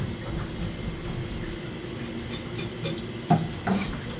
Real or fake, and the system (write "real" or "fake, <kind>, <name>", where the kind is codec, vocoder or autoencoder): real